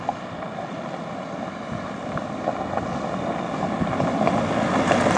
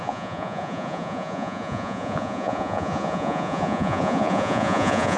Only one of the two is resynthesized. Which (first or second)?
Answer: second